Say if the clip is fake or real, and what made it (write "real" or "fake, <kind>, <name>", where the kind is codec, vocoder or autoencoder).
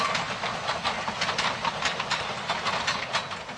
real